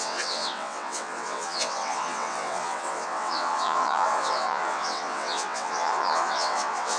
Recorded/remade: remade